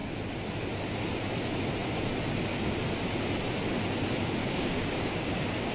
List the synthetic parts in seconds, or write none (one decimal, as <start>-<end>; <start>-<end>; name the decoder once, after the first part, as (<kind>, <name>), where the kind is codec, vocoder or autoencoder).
4.4-5.7 (codec, DAC)